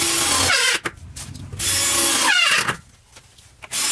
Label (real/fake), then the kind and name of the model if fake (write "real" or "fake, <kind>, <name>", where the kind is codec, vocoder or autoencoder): real